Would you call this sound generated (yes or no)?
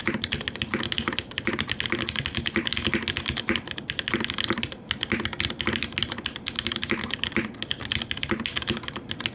no